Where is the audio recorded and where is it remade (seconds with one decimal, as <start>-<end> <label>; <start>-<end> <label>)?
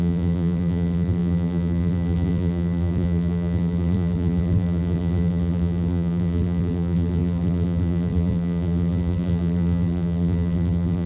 0.0-11.1 remade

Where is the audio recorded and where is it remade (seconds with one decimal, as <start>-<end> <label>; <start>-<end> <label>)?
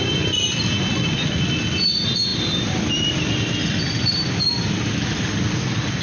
0.0-2.3 recorded; 2.3-3.2 remade; 3.2-3.6 recorded; 3.6-6.0 remade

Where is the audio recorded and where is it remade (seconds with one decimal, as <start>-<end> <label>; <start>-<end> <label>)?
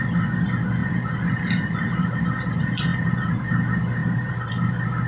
0.0-0.8 recorded; 0.8-2.2 remade; 2.2-2.9 recorded; 2.9-3.6 remade; 3.6-4.0 recorded; 4.0-4.5 remade; 4.5-5.1 recorded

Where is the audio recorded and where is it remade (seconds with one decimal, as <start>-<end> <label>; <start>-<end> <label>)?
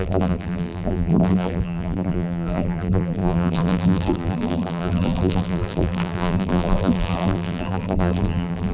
0.0-8.7 remade